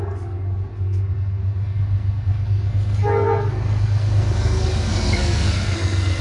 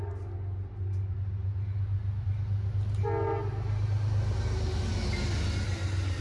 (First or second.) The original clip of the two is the second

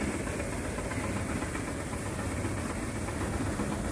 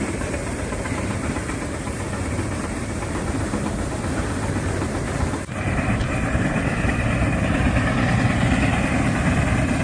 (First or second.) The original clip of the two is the first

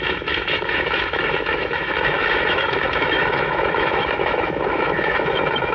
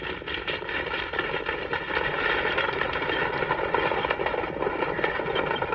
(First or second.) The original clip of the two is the second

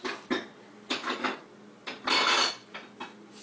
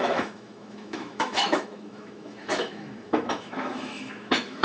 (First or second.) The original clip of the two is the first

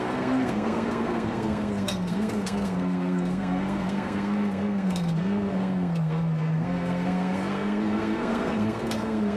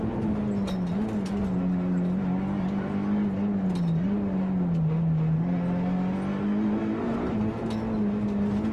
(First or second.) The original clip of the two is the second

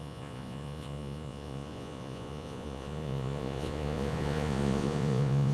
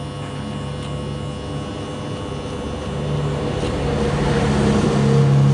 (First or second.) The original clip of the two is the second